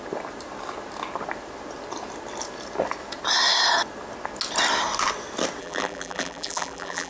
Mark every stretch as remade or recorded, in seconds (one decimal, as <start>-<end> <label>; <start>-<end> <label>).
0.0-5.6 recorded; 5.6-7.1 remade